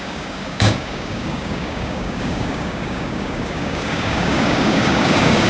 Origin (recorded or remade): remade